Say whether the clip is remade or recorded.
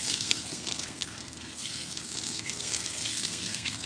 remade